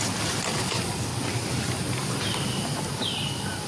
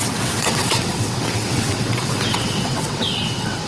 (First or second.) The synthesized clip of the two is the second